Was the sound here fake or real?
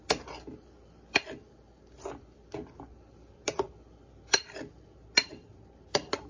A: real